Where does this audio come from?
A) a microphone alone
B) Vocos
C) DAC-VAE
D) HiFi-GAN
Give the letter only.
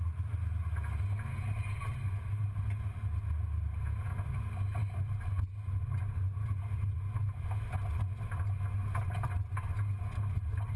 A